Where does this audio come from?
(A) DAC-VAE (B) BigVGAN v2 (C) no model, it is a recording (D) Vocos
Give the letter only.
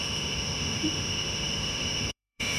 A